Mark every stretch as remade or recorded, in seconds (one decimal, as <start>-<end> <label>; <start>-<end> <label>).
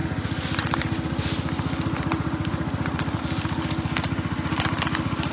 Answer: 0.0-5.3 recorded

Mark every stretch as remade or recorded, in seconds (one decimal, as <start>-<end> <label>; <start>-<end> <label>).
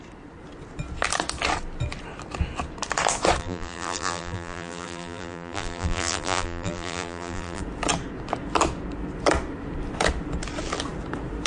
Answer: 0.0-3.4 recorded; 3.4-7.6 remade; 7.6-11.5 recorded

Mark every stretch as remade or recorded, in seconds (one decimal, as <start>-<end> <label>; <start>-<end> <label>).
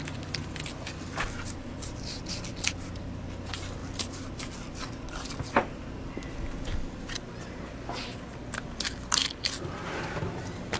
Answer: 0.0-10.8 recorded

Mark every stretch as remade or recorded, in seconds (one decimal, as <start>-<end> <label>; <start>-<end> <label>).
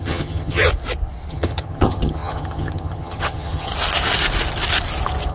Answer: 0.0-0.7 remade; 0.7-1.3 recorded; 1.3-3.7 remade; 3.7-5.3 recorded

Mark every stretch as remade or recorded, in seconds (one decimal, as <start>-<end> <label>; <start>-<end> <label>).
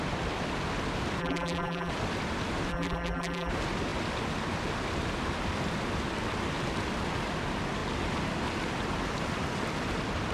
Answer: 0.0-1.2 recorded; 1.2-1.9 remade; 1.9-2.7 recorded; 2.7-3.5 remade; 3.5-10.3 recorded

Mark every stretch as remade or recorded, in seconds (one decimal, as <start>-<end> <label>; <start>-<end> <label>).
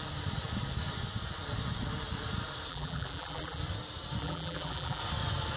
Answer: 0.0-2.7 recorded; 2.7-3.6 remade; 3.6-4.2 recorded; 4.2-5.0 remade; 5.0-5.6 recorded